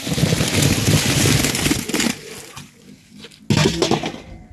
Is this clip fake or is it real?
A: real